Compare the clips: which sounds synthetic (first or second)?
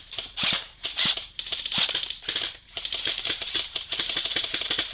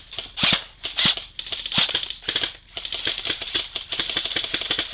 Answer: first